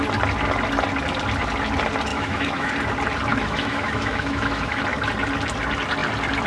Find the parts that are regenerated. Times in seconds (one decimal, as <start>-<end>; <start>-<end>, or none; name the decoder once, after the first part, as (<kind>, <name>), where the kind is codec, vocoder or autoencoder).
2.1-2.7 (autoencoder, DAC-VAE); 3.3-4.8